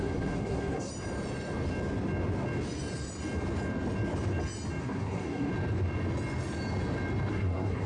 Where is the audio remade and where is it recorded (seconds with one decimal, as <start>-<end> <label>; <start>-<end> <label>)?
0.0-0.9 remade; 0.9-4.8 recorded; 4.8-5.5 remade; 5.5-7.3 recorded; 7.3-7.9 remade